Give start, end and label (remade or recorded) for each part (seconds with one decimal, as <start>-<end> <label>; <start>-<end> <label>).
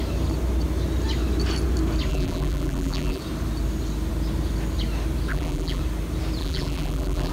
0.0-2.1 recorded; 2.1-3.2 remade; 3.2-5.3 recorded; 5.3-5.8 remade; 5.8-6.4 recorded; 6.4-7.3 remade